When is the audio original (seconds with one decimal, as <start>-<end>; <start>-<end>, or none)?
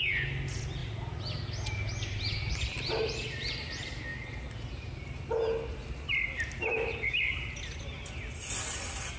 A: 0.0-9.2